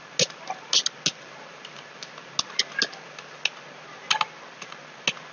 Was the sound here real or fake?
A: real